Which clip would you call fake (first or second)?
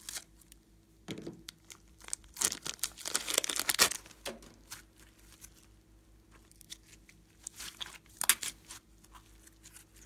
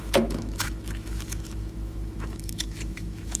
second